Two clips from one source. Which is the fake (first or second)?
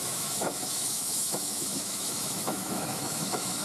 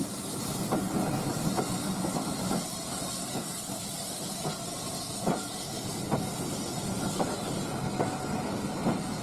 first